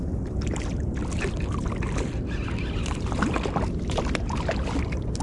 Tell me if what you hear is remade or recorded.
recorded